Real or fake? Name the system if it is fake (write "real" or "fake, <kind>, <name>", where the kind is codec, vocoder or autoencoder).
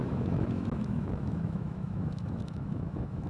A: fake, autoencoder, DAC-VAE